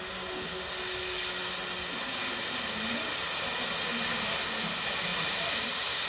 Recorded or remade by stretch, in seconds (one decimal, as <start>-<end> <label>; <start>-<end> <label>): 0.0-5.1 recorded; 5.1-6.1 remade